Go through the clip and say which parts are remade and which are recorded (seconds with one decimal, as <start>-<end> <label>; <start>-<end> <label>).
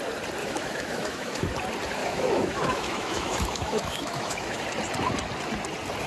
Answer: 0.0-0.4 recorded; 0.4-1.4 remade; 1.4-2.0 recorded; 2.0-4.6 remade; 4.6-6.1 recorded